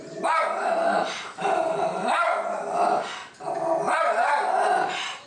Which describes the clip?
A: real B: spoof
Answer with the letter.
A